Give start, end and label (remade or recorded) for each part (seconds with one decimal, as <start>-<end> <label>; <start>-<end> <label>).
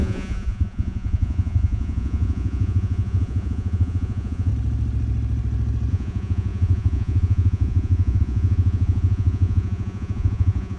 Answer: 0.0-4.5 remade; 4.5-5.9 recorded; 5.9-10.8 remade